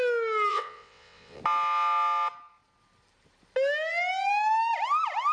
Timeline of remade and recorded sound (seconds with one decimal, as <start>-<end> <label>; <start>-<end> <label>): 0.0-0.5 recorded; 0.5-1.4 remade; 1.4-5.3 recorded